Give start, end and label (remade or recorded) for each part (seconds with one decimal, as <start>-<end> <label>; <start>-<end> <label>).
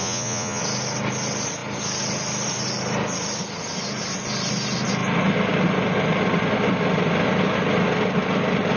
0.0-0.6 remade; 0.6-8.8 recorded